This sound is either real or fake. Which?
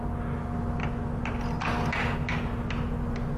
real